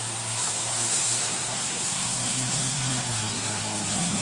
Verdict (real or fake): fake